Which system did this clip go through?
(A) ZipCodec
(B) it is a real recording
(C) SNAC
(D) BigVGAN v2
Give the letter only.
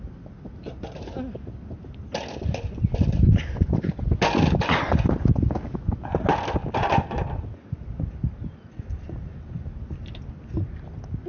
B